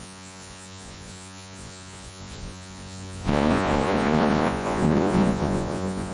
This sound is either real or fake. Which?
fake